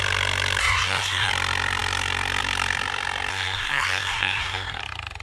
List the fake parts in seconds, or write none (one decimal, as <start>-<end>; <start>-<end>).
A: 0.6-1.3; 3.3-4.8